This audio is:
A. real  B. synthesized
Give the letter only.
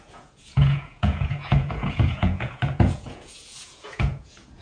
B